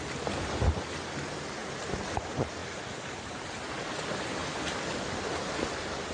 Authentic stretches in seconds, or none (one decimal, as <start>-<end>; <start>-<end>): 0.0-1.6; 2.2-6.1